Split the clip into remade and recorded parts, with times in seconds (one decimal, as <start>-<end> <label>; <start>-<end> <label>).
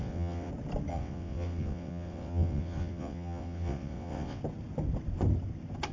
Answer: 0.0-0.5 remade; 0.5-0.9 recorded; 0.9-4.4 remade; 4.4-5.9 recorded